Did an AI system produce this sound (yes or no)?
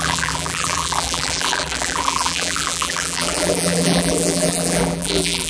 yes